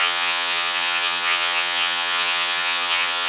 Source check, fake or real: fake